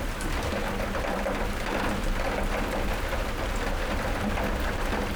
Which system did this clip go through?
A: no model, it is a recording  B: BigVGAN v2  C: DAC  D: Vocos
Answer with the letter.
B